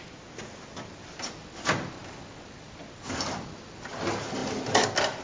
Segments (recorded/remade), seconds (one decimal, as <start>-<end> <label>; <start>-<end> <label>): 0.0-5.2 recorded